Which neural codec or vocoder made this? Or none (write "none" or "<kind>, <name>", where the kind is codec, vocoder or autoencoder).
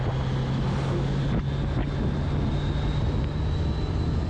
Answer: none